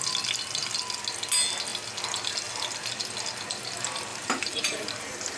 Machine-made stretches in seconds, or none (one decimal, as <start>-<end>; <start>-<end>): 4.1-5.4